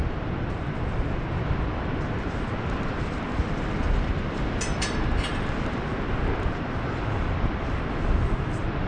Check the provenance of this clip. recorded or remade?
recorded